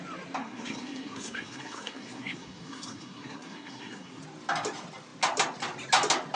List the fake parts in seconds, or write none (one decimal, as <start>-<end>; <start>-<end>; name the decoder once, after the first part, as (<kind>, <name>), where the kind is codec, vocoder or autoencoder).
0.4-4.2 (codec, SNAC)